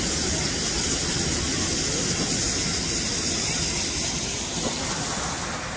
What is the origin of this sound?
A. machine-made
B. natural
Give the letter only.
B